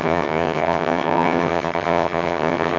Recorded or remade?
remade